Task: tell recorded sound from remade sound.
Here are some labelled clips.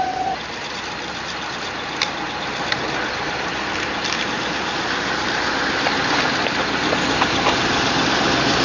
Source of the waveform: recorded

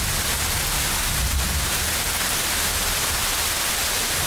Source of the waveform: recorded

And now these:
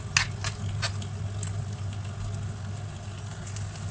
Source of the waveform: recorded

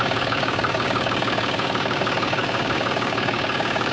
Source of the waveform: remade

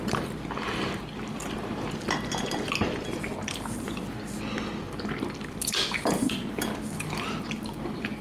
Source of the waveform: recorded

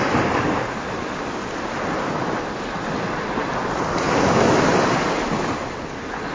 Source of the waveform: recorded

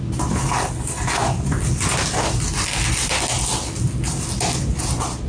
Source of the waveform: recorded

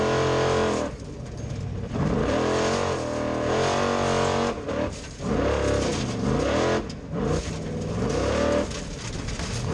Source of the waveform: recorded